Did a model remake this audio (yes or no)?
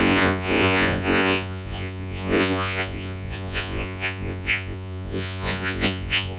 yes